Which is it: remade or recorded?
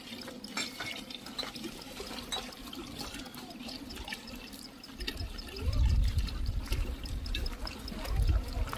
remade